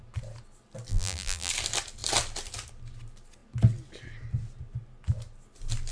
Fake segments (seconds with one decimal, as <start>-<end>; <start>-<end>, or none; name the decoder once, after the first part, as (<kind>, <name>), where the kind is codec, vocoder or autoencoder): 0.9-1.5 (vocoder, BigVGAN v2)